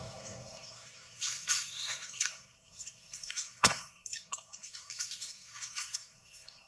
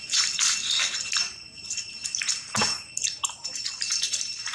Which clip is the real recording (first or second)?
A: second